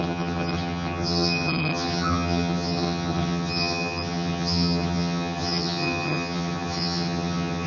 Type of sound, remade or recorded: remade